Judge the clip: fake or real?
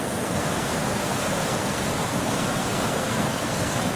fake